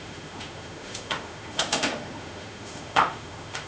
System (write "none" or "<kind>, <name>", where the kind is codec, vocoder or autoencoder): autoencoder, DAC-VAE